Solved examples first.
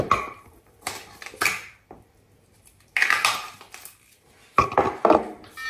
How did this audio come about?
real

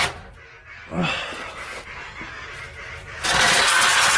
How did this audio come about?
real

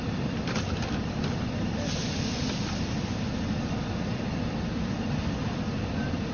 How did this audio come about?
fake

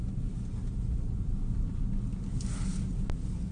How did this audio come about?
real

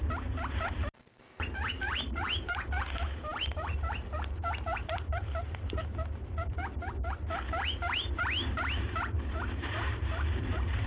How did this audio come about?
fake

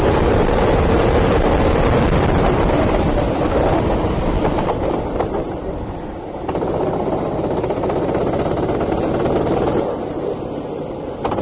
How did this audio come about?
fake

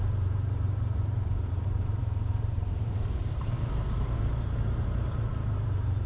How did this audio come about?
fake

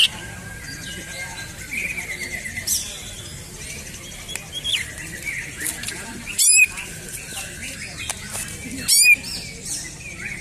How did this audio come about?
real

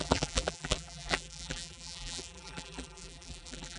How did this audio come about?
fake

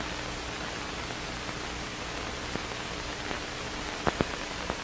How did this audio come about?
real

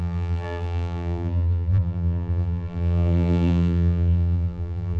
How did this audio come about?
fake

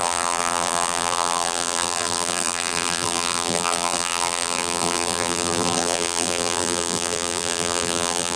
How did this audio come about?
fake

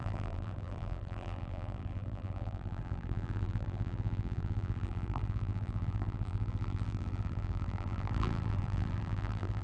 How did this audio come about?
fake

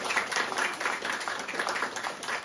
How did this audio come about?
fake